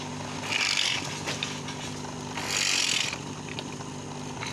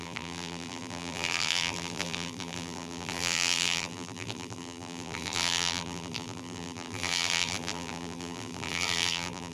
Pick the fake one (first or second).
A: second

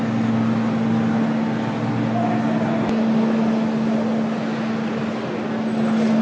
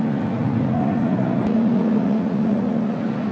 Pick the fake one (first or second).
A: second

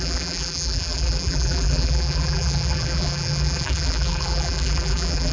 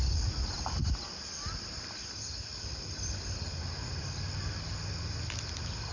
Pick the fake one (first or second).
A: first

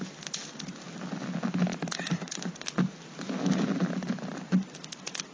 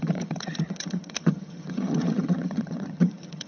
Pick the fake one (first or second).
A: second